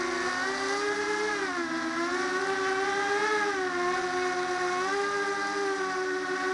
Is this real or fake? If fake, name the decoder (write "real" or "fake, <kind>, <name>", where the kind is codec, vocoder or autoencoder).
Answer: real